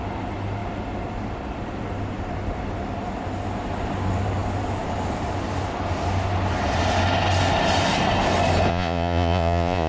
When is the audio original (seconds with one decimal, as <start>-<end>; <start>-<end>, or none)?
0.0-8.7